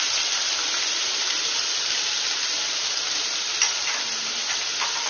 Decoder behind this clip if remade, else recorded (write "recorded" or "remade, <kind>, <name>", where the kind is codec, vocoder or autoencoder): remade, vocoder, BigVGAN v2